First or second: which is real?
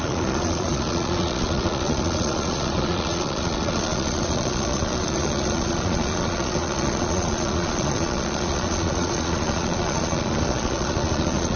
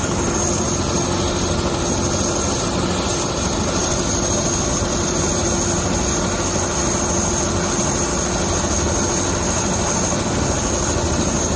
second